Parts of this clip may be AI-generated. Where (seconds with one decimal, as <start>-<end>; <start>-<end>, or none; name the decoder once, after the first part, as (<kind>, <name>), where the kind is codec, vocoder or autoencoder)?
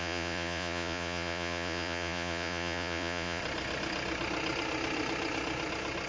0.0-3.4 (vocoder, Vocos)